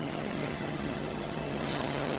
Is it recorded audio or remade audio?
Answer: remade